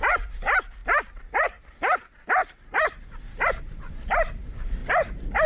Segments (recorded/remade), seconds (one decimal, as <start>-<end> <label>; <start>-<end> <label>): 0.0-5.5 recorded